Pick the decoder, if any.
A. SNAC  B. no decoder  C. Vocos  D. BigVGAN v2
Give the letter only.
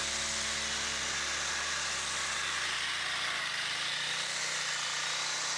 B